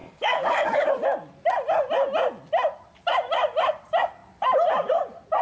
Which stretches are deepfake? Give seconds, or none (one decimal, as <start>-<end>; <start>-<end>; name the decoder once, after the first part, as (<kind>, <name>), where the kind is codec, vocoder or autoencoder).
0.0-0.9 (codec, DAC)